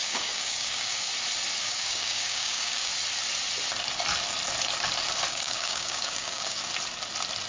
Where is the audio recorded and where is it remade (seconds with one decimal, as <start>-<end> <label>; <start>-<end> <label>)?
0.0-1.1 remade; 1.1-1.6 recorded; 1.6-2.9 remade; 2.9-5.3 recorded; 5.3-6.6 remade; 6.6-7.5 recorded